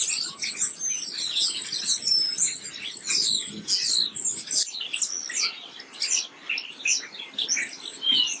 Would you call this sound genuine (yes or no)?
yes